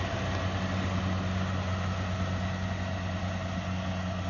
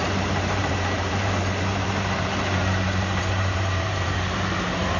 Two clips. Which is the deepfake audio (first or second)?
second